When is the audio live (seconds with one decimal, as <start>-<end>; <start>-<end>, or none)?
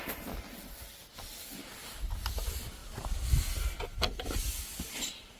0.0-5.4